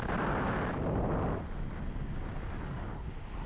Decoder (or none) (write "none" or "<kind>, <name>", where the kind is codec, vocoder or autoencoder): none